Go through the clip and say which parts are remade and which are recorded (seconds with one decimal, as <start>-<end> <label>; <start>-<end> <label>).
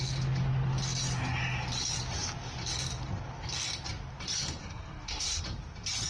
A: 0.0-4.6 recorded; 4.6-5.4 remade; 5.4-6.1 recorded